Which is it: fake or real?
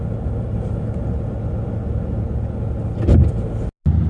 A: real